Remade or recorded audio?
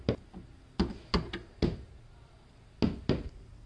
recorded